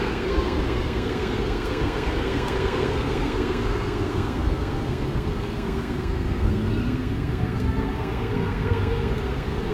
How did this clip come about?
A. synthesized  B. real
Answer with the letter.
A